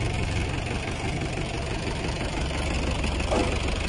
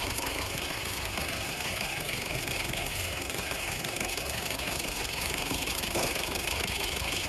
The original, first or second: first